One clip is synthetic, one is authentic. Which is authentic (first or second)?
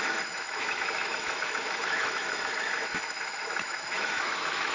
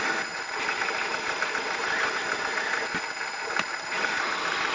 second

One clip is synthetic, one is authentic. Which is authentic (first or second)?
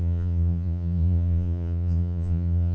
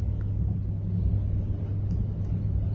second